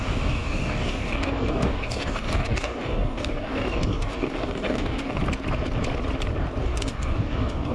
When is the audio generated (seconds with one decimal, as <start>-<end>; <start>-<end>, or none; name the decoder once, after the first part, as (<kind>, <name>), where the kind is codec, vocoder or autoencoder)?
0.0-5.2 (codec, DAC); 6.6-7.7